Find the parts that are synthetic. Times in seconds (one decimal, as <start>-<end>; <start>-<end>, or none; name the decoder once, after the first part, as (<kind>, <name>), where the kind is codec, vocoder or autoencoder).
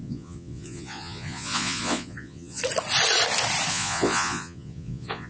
0.0-2.6 (vocoder, Vocos); 3.7-5.3